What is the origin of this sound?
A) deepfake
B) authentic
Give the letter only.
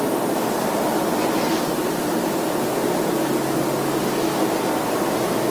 B